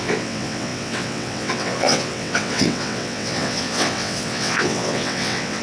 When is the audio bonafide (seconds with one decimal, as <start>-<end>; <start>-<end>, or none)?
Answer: none